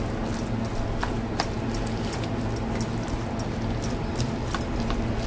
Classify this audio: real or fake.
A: real